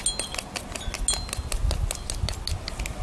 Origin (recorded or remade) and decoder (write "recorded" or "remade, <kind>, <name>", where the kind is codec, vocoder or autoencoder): recorded